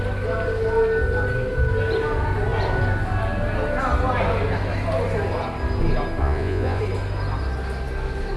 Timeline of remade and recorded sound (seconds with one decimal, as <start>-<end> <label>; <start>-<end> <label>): 0.0-6.2 recorded; 6.2-6.8 remade; 6.8-8.4 recorded